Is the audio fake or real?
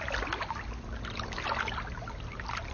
real